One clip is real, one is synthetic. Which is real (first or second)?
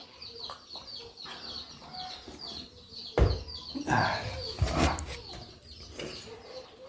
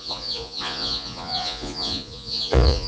first